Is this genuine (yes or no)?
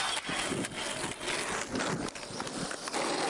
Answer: yes